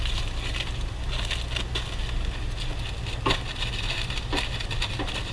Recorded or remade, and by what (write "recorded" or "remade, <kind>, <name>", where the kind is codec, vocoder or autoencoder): recorded